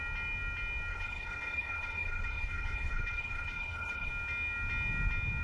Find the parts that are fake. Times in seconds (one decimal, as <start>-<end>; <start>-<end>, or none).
0.9-4.1